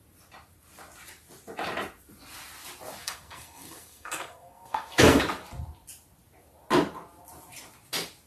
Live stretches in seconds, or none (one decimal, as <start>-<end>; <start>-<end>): 0.0-3.0; 5.2-8.3